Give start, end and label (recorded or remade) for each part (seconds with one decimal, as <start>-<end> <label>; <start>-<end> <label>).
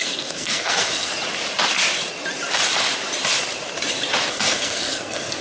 0.0-1.1 remade; 1.1-4.3 recorded; 4.3-5.4 remade